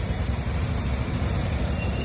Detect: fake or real real